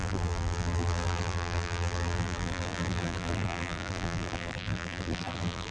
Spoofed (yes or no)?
yes